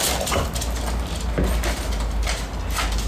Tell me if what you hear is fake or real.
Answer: real